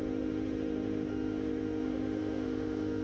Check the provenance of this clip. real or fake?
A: fake